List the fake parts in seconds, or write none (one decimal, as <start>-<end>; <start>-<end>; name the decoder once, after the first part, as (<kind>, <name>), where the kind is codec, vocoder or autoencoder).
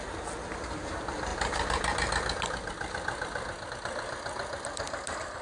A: none